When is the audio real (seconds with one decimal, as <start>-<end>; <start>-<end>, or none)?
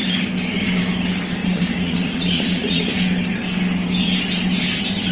0.0-1.4; 2.9-5.1